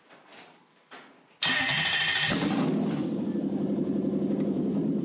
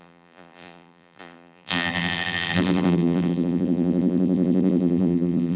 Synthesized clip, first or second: second